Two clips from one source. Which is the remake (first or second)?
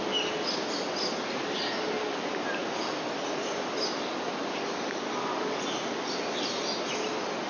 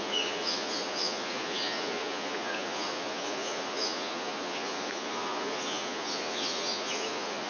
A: second